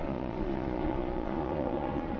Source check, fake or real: fake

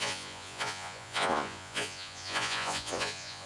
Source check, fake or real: fake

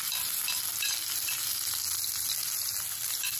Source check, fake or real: real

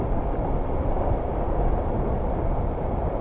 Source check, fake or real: real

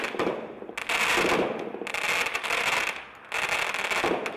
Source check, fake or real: real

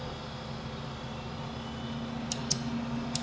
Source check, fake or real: real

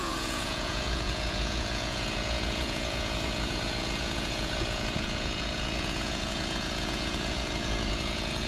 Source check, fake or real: fake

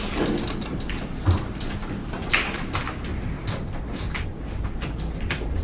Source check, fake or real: real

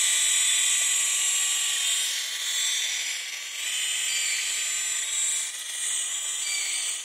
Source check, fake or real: real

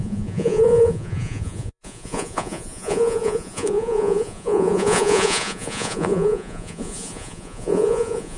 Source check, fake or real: fake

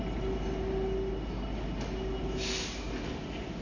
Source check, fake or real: real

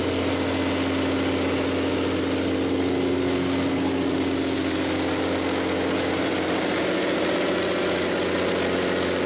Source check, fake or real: real